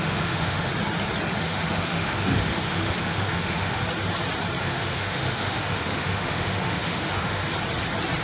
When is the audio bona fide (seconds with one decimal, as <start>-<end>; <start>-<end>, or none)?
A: 0.7-1.4; 3.8-4.6; 7.4-8.2